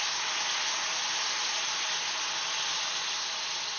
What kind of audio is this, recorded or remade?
recorded